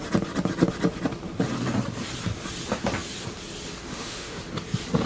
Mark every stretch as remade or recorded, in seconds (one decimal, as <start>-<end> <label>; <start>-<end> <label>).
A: 0.0-3.9 recorded; 3.9-4.4 remade; 4.4-5.1 recorded